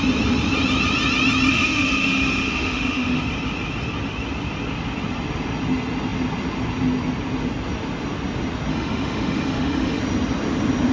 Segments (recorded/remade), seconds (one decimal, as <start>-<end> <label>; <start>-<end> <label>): 0.0-1.5 recorded; 1.5-3.2 remade; 3.2-8.7 recorded; 8.7-10.0 remade; 10.0-10.9 recorded